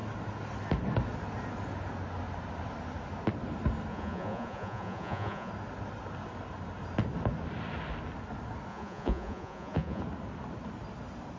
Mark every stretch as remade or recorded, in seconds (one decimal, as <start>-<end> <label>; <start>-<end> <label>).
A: 0.0-3.9 recorded; 3.9-5.5 remade; 5.5-8.7 recorded; 8.7-10.0 remade; 10.0-11.4 recorded